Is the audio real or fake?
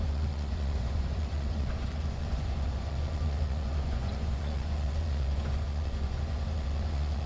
fake